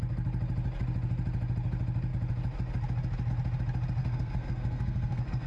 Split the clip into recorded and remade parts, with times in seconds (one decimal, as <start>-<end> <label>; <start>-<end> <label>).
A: 0.0-4.0 recorded; 4.0-5.5 remade